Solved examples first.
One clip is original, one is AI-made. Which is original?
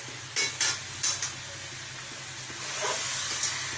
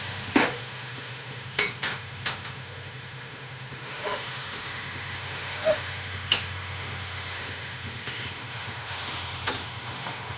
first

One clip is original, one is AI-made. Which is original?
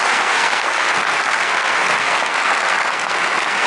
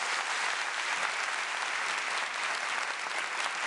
second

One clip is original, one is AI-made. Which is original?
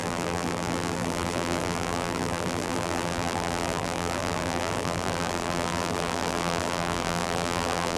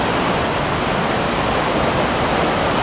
second